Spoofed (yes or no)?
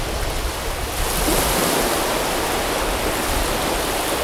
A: no